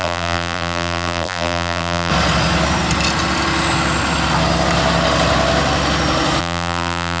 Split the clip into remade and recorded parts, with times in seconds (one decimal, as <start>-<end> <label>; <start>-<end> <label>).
0.0-2.1 remade; 2.1-6.4 recorded; 6.4-7.2 remade

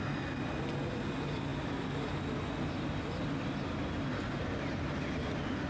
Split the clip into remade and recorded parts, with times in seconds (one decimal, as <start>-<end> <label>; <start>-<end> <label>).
0.0-5.7 recorded

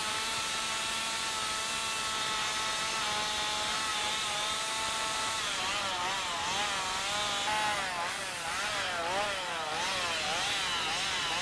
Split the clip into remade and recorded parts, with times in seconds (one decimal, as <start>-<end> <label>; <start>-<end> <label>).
0.0-1.0 remade; 1.0-3.9 recorded; 3.9-5.6 remade; 5.6-11.4 recorded